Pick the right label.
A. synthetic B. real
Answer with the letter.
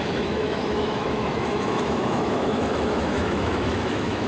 A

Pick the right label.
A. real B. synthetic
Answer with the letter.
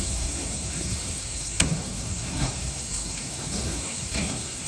B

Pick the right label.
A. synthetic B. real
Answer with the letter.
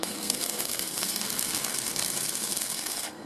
A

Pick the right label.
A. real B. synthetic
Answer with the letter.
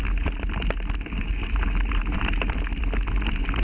A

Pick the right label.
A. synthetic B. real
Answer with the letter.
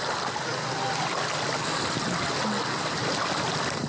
B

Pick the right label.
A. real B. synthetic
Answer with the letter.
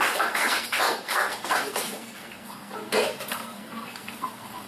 B